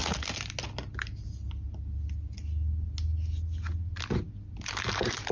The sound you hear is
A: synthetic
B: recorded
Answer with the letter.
B